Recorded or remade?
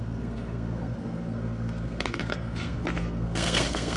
remade